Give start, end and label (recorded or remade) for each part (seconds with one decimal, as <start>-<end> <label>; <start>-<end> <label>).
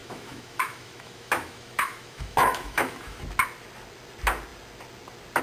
0.0-3.2 remade; 3.2-5.4 recorded